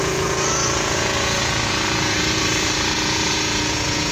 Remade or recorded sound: remade